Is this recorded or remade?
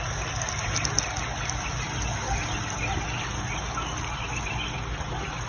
recorded